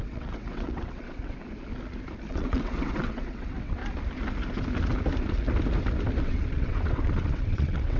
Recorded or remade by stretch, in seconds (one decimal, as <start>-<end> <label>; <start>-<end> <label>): 0.0-1.4 remade; 1.4-2.3 recorded; 2.3-3.8 remade; 3.8-6.2 recorded; 6.2-8.0 remade